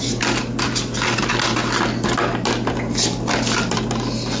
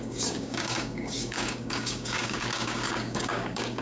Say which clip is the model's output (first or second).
second